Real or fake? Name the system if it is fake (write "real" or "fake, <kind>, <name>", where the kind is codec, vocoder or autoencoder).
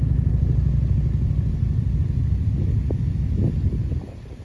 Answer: real